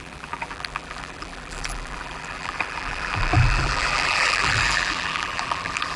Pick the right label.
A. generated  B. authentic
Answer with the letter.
A